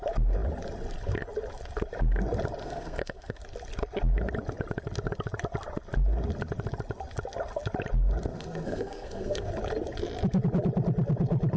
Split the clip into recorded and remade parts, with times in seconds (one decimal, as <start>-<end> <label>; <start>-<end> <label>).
0.0-2.6 recorded; 2.6-3.4 remade; 3.4-8.3 recorded; 8.3-9.5 remade; 9.5-11.6 recorded